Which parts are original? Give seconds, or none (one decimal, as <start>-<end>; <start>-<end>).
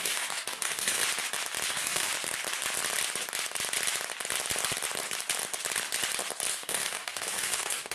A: 1.0-1.7; 2.1-6.5